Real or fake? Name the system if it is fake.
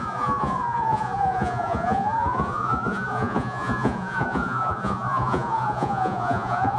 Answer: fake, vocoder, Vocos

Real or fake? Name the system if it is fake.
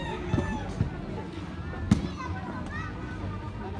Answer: real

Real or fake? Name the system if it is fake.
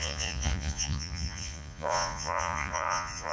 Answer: fake, vocoder, Vocos